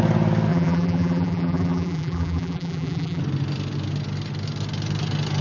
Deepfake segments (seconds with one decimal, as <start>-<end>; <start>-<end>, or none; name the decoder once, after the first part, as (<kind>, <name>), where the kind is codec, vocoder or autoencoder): 0.5-3.2 (vocoder, BigVGAN v2)